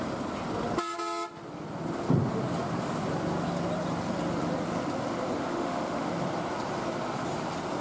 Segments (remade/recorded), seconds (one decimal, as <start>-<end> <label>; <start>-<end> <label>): 0.0-5.5 recorded; 5.5-6.1 remade; 6.1-7.8 recorded